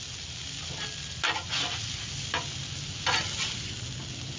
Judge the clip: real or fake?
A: real